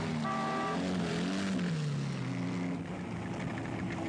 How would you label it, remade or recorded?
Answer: recorded